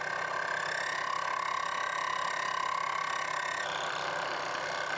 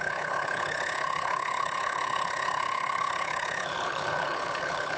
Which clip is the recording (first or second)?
first